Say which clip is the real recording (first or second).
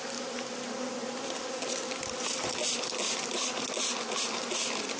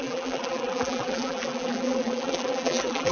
first